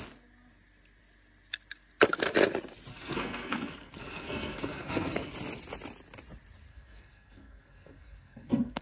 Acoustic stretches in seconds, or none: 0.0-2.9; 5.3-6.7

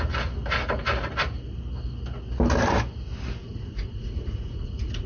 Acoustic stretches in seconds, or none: 0.0-3.4

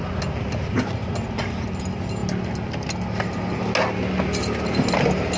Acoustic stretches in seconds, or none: 0.0-5.4

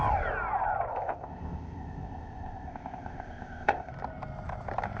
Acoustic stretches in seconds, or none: 0.0-0.9; 3.9-5.0